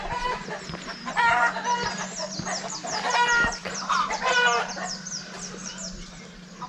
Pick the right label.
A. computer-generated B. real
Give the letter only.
A